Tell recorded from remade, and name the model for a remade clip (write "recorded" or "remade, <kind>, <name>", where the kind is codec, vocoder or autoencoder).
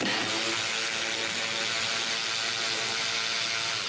recorded